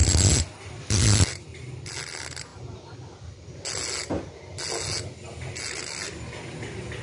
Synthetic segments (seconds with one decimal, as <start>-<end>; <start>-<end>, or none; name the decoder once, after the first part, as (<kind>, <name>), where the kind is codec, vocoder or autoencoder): 0.0-1.6 (vocoder, BigVGAN v2)